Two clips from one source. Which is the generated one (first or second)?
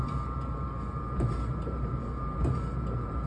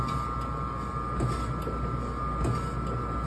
first